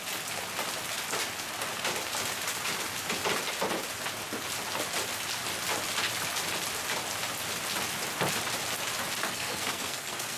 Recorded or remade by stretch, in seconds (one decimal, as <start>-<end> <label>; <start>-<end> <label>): 0.0-9.2 recorded; 9.2-10.4 remade